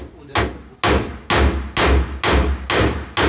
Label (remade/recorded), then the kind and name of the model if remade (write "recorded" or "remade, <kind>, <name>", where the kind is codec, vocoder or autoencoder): recorded